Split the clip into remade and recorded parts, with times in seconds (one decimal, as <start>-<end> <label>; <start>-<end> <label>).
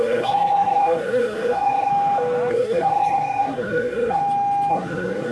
0.0-1.9 remade; 1.9-2.5 recorded; 2.5-4.2 remade; 4.2-4.7 recorded; 4.7-5.3 remade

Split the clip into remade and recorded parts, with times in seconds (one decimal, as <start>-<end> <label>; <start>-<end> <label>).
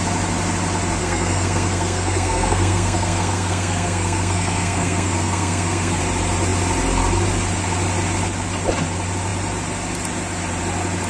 0.0-1.0 recorded; 1.0-6.0 remade; 6.0-11.1 recorded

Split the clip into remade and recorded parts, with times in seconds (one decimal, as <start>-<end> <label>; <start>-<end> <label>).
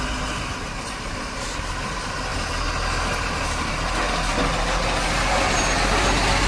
0.0-6.5 recorded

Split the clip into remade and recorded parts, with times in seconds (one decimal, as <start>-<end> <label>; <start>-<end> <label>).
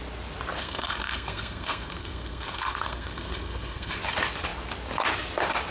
0.0-0.6 recorded; 0.6-4.0 remade; 4.0-5.7 recorded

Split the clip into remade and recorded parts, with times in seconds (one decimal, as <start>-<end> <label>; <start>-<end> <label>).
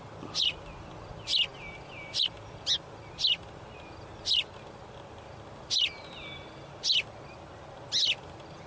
0.0-8.7 recorded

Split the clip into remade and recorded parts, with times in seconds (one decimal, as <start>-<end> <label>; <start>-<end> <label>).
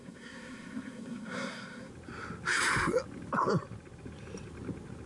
0.0-1.9 remade; 1.9-5.1 recorded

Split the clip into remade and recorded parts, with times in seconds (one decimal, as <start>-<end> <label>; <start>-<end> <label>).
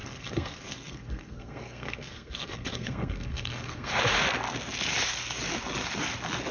0.0-3.9 remade; 3.9-6.5 recorded